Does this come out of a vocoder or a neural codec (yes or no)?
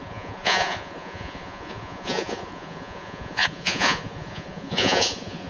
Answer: yes